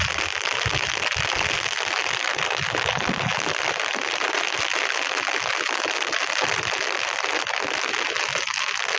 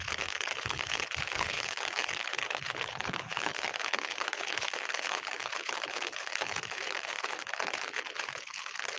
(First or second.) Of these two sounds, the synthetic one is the second